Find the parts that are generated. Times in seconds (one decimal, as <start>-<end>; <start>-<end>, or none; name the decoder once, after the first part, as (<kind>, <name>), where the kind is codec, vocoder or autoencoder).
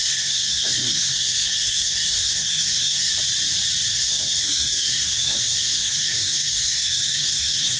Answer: 0.0-3.1 (codec, SNAC); 3.9-7.8